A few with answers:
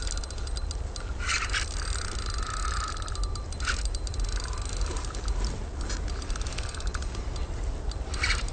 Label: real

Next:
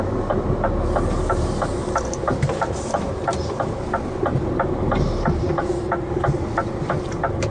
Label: real